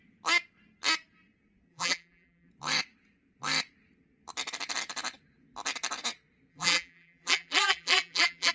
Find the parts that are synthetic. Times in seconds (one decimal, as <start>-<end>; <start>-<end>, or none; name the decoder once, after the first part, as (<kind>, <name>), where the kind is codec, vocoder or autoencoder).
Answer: 1.7-2.5 (vocoder, BigVGAN v2); 6.5-8.5